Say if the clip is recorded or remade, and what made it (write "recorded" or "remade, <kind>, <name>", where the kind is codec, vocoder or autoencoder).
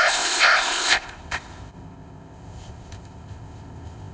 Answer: remade, codec, ZipCodec